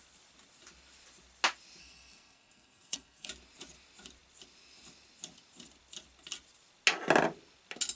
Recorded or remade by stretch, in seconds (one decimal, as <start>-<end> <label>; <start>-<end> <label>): 0.0-1.8 recorded; 1.8-3.3 remade; 3.3-8.0 recorded